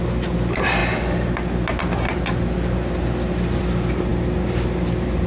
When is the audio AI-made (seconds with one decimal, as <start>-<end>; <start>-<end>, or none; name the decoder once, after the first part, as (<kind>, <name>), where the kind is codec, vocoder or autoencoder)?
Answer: none